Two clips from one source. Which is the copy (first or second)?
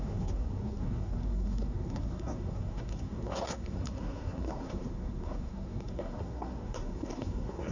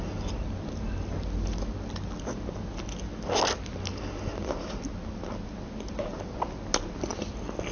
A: first